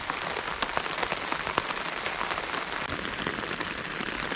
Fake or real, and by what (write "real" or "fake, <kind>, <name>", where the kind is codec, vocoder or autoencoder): real